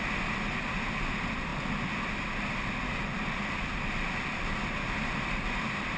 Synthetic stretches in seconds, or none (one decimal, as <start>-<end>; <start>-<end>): none